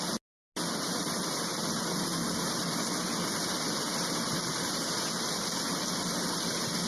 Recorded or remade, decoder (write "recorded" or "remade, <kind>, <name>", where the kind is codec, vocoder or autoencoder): recorded